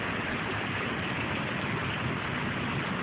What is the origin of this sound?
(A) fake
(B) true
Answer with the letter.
B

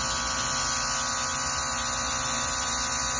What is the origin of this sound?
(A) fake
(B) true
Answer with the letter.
B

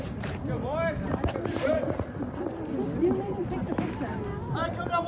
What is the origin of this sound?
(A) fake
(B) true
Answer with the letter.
A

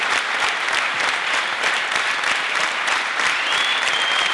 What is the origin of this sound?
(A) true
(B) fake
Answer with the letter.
B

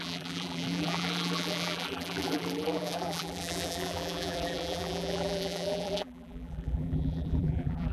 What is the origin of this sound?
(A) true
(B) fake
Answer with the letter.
B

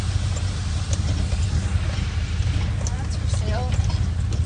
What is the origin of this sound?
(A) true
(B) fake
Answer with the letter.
A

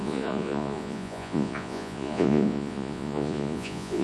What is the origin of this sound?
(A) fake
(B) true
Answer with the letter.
A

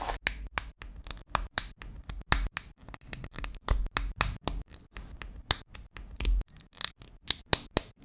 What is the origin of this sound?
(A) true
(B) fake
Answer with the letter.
A